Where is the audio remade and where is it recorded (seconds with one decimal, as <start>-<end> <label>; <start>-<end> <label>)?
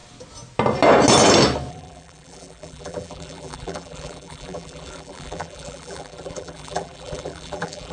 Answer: 0.0-1.7 recorded; 1.7-7.9 remade